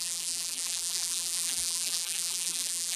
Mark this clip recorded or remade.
remade